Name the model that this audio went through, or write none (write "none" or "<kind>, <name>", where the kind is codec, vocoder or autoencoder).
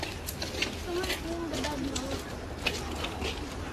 none